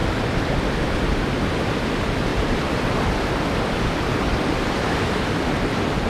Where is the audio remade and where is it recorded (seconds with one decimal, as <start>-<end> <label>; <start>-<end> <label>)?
0.0-0.8 remade; 0.8-2.3 recorded; 2.3-4.4 remade; 4.4-6.1 recorded